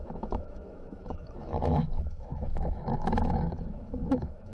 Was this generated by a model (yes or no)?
yes